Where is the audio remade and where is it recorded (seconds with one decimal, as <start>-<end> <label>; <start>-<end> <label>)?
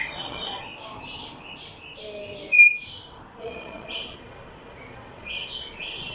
0.0-0.7 remade; 0.7-3.4 recorded; 3.4-6.1 remade